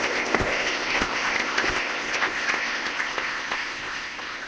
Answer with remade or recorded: remade